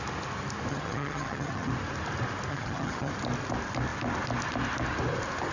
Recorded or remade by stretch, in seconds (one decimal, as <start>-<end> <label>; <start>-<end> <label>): 0.0-0.7 recorded; 0.7-1.7 remade; 1.7-2.5 recorded; 2.5-3.1 remade; 3.1-5.5 recorded